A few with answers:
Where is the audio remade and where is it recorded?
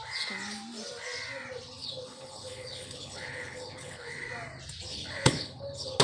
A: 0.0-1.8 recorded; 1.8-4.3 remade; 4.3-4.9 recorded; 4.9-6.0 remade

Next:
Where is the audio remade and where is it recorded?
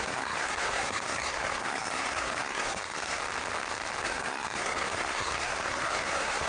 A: 0.0-3.2 remade; 3.2-4.0 recorded; 4.0-6.5 remade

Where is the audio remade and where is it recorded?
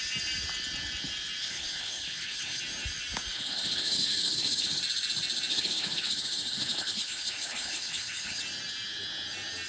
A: 0.0-1.4 recorded; 1.4-2.6 remade; 2.6-3.3 recorded; 3.3-4.8 remade; 4.8-5.5 recorded; 5.5-8.4 remade; 8.4-9.7 recorded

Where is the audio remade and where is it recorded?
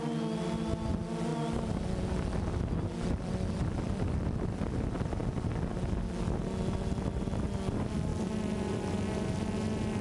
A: 0.0-8.1 recorded; 8.1-8.9 remade; 8.9-10.0 recorded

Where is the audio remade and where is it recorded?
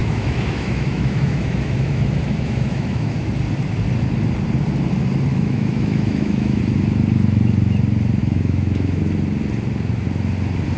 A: 0.0-3.3 remade; 3.3-5.3 recorded; 5.3-6.6 remade; 6.6-8.2 recorded; 8.2-9.0 remade; 9.0-10.8 recorded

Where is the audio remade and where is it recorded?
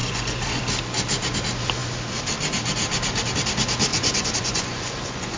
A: 0.0-0.6 remade; 0.6-3.9 recorded; 3.9-5.4 remade